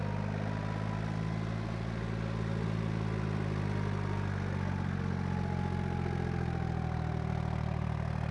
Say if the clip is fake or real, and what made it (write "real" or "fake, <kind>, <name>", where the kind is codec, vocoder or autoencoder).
real